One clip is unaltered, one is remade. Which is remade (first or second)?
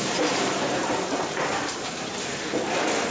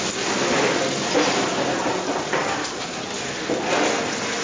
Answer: first